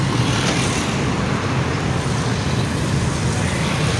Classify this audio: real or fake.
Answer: real